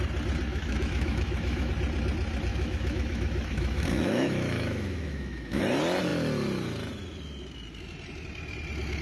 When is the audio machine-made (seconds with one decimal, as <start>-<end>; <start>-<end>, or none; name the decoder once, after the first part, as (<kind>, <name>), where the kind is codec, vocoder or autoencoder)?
0.5-1.7 (autoencoder, DAC-VAE); 2.5-5.6